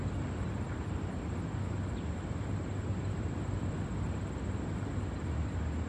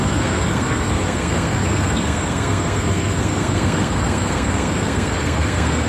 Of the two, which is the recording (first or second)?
first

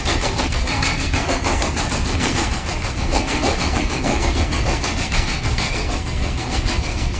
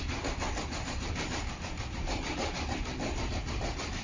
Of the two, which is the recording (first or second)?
second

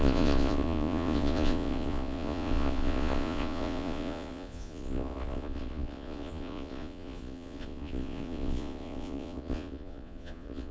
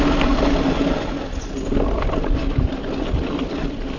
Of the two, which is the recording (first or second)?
second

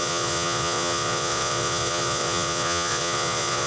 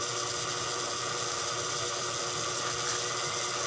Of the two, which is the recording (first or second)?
second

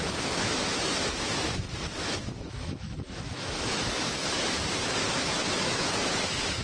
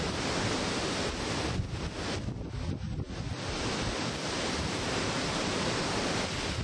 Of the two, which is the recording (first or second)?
second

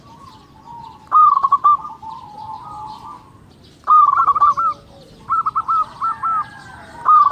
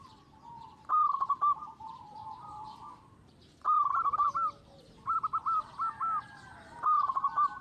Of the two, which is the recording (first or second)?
first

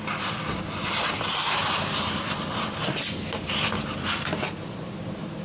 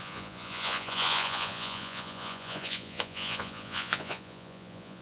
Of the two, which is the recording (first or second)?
first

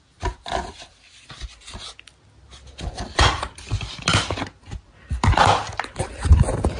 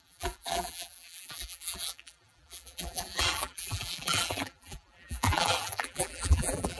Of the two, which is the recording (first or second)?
first